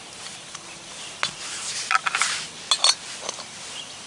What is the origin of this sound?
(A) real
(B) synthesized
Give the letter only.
A